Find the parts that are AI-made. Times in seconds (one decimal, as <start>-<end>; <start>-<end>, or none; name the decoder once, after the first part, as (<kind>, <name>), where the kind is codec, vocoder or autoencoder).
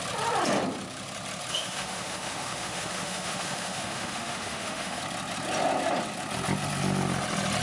1.5-5.0 (autoencoder, DAC-VAE)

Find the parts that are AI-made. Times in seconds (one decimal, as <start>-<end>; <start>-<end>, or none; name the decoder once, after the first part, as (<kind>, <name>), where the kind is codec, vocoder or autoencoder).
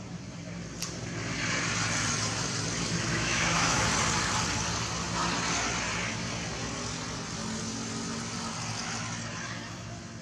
3.1-3.9 (autoencoder, DAC-VAE)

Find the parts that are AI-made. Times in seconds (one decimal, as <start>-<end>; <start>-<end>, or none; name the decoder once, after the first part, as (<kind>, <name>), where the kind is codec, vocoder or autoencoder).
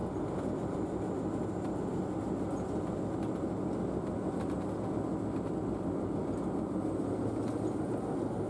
none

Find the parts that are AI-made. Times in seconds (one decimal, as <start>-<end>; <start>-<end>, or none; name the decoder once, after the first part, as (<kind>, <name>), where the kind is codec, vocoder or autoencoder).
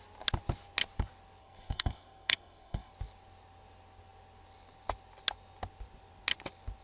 1.4-2.9 (codec, SNAC)